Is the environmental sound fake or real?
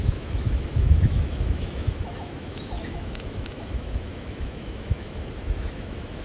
fake